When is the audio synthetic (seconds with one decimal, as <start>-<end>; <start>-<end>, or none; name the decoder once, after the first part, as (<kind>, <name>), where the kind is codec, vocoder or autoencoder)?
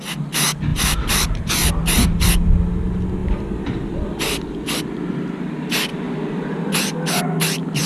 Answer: 0.7-1.7 (vocoder, BigVGAN v2); 3.2-4.8